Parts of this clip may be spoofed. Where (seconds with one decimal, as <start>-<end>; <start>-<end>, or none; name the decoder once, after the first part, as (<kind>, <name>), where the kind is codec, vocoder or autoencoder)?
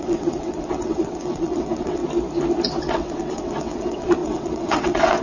0.0-2.0 (vocoder, WaveNeXt); 2.8-5.2